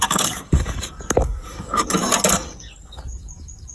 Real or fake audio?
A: fake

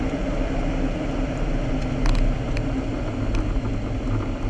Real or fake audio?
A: real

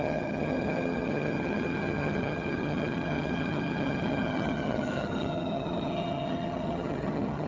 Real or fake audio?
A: fake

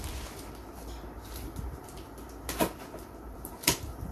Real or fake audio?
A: real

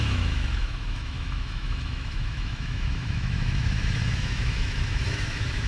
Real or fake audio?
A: fake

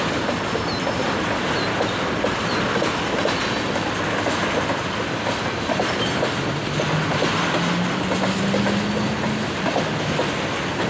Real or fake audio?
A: real